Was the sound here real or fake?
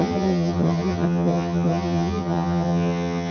fake